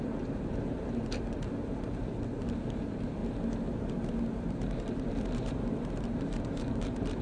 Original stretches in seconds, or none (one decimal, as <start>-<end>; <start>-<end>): 3.2-3.9